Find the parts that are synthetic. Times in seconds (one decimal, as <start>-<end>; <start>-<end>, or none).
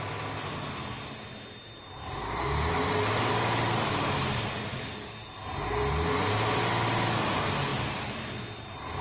2.2-3.3; 4.7-5.4